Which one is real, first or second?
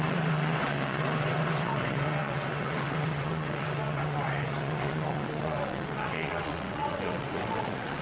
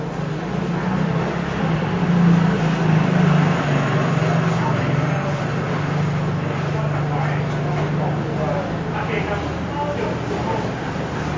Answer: second